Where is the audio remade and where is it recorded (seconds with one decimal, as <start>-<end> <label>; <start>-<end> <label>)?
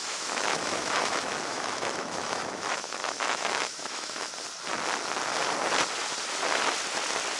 0.0-4.3 remade; 4.3-7.4 recorded